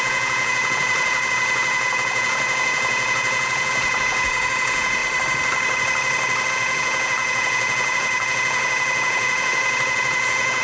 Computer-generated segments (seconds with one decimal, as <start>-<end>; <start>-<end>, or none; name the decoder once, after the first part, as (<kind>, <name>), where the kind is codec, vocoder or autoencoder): 0.0-5.0 (vocoder, Vocos); 6.5-10.6